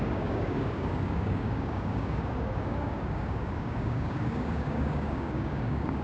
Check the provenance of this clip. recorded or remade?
remade